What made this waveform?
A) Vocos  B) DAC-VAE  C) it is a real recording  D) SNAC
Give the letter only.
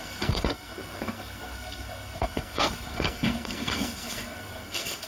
D